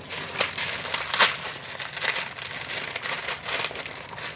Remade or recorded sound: recorded